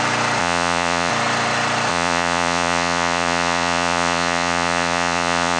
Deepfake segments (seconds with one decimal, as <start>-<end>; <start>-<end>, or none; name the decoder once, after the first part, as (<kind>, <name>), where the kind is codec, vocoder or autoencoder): 0.4-1.1 (vocoder, Vocos); 1.9-5.6

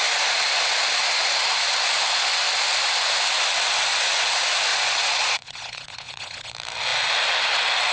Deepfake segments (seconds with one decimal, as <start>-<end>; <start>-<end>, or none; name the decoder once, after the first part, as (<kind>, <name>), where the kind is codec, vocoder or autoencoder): 4.7-6.5 (vocoder, Vocos)

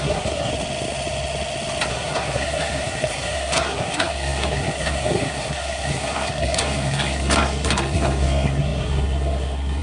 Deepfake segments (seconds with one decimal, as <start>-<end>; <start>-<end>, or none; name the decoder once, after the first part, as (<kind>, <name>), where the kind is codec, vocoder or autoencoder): 0.0-0.5 (codec, SNAC); 1.9-9.8

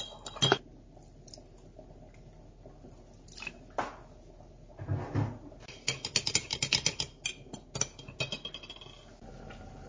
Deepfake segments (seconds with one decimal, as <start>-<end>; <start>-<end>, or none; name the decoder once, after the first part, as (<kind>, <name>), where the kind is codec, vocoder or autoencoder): none

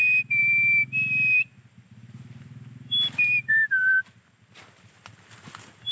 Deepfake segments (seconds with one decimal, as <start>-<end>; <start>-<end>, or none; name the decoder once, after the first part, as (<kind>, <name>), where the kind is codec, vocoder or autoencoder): none

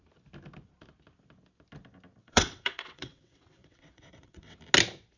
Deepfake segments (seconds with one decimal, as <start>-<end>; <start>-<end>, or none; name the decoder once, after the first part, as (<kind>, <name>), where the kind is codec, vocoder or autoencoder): 2.2-4.6 (vocoder, WaveNeXt)

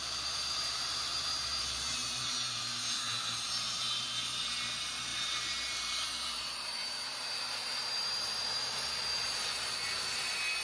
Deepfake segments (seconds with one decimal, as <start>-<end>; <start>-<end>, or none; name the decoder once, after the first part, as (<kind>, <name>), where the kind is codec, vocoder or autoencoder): 0.0-10.6 (vocoder, BigVGAN v2)